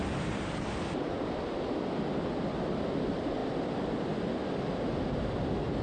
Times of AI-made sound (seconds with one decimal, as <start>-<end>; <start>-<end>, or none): none